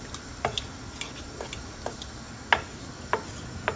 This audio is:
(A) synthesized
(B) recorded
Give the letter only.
B